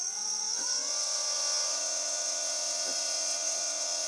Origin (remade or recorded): remade